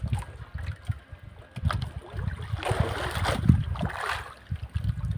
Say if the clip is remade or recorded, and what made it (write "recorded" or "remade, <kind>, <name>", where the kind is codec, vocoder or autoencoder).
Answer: recorded